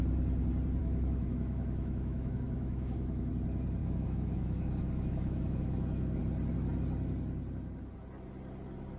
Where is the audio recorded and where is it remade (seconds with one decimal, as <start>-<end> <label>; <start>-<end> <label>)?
0.0-0.8 recorded; 0.8-3.3 remade; 3.3-3.8 recorded; 3.8-6.2 remade; 6.2-9.0 recorded